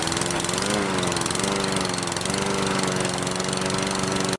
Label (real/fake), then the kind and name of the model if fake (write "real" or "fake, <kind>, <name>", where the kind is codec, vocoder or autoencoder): real